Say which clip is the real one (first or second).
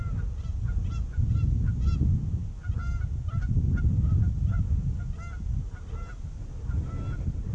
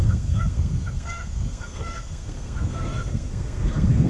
first